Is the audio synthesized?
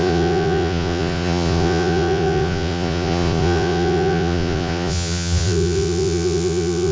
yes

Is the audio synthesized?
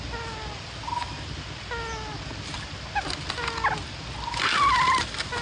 no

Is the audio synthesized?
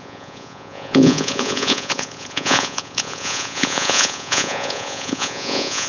yes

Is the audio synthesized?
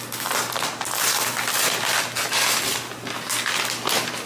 no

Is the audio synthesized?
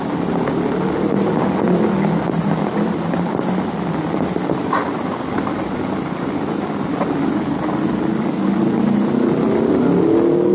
no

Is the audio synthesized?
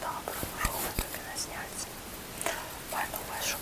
no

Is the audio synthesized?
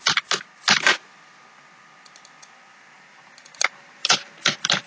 no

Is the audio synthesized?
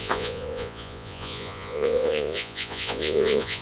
yes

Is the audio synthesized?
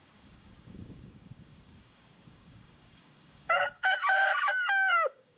yes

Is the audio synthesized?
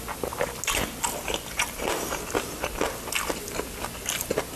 no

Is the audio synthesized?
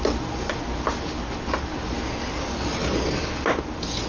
no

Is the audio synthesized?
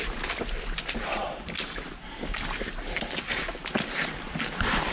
no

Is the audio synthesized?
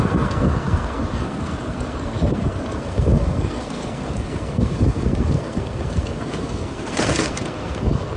yes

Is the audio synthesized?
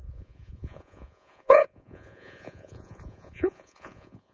yes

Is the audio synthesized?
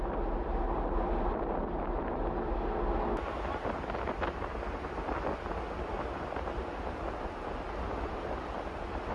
no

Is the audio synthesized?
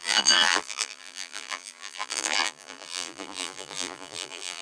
yes